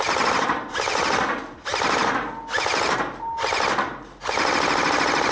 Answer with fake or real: real